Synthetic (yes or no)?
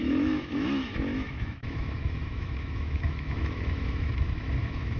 yes